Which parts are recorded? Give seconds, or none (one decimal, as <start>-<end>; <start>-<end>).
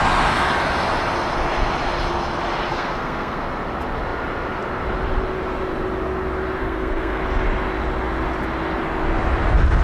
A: 0.0-2.7; 3.4-6.6; 7.2-9.8